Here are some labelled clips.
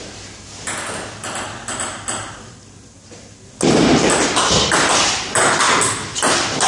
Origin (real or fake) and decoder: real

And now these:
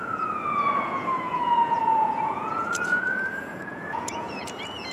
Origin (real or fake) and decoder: fake, vocoder, Vocos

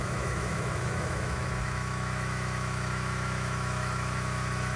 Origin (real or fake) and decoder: fake, autoencoder, DAC-VAE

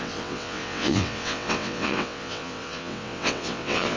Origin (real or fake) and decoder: fake, vocoder, WaveNeXt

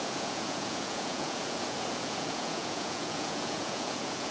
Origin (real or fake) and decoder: fake, vocoder, Vocos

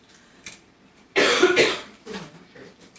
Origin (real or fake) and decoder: fake, vocoder, BigVGAN v2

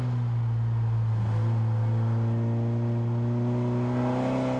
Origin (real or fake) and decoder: real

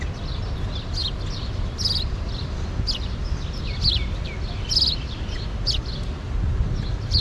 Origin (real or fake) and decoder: real